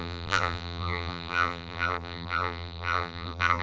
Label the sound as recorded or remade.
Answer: remade